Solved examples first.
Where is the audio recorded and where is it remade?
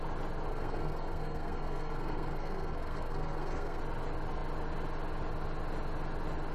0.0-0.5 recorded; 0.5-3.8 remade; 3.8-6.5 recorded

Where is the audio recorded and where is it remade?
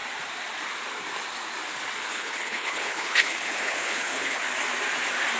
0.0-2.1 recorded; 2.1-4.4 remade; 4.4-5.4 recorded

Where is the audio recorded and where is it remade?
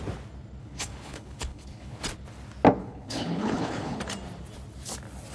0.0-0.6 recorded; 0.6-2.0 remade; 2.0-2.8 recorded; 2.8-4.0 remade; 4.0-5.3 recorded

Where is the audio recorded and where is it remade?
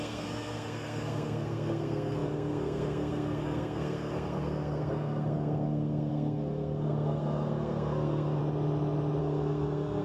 0.0-8.4 remade; 8.4-9.2 recorded; 9.2-10.0 remade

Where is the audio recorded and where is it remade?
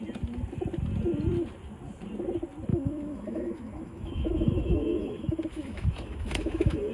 0.0-2.7 recorded; 2.7-6.9 remade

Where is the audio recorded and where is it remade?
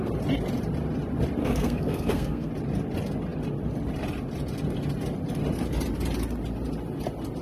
0.0-1.4 recorded; 1.4-2.5 remade; 2.5-7.4 recorded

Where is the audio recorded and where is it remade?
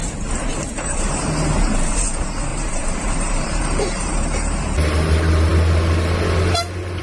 0.0-0.5 recorded; 0.5-1.1 remade; 1.1-2.5 recorded; 2.5-4.6 remade; 4.6-7.0 recorded